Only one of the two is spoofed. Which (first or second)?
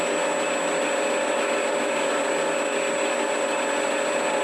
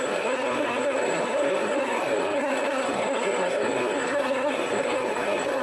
second